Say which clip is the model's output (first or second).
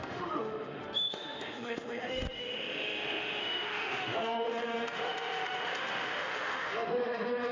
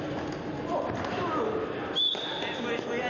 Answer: first